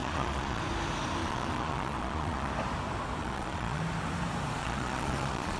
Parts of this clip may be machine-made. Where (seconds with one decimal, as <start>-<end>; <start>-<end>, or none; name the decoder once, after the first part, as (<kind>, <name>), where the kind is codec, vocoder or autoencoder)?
0.0-0.6 (vocoder, Vocos); 1.2-2.5; 3.2-3.8; 4.6-5.6